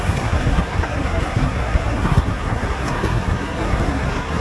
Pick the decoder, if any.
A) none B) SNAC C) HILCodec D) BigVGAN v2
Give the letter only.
B